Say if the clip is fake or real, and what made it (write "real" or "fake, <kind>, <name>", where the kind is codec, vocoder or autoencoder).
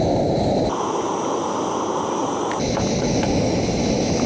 real